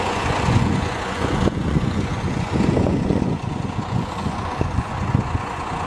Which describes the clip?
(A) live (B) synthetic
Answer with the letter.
B